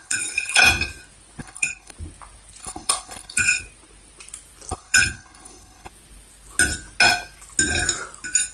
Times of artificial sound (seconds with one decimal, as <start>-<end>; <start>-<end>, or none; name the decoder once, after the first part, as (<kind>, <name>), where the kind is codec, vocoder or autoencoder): 0.0-0.6 (codec, HILCodec); 1.4-1.9; 2.6-3.6; 4.7-5.9